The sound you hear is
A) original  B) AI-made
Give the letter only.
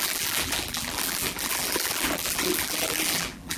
B